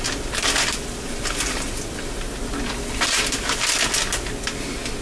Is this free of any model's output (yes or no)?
yes